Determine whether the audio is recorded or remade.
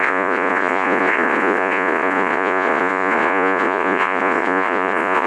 remade